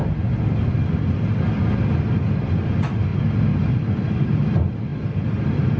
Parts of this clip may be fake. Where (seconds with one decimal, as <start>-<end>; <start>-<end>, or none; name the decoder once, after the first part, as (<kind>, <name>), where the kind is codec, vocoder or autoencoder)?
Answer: none